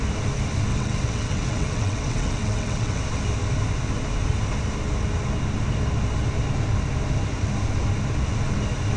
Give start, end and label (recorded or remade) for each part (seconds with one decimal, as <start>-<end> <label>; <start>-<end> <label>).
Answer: 0.0-0.7 recorded; 0.7-3.0 remade; 3.0-9.0 recorded